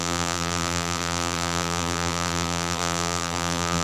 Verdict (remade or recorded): remade